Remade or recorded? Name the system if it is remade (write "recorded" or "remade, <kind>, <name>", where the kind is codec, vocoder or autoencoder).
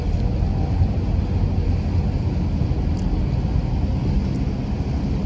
recorded